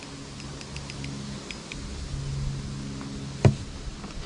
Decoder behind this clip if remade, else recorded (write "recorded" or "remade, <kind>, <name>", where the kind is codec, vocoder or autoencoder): recorded